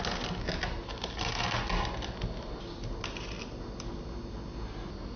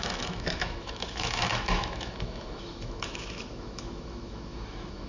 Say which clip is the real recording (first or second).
first